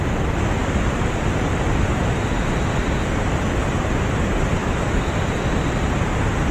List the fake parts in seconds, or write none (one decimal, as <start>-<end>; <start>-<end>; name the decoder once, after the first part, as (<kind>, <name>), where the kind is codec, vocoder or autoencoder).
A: 4.6-5.2 (autoencoder, DAC-VAE)